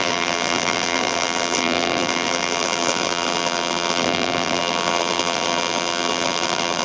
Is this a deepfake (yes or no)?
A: yes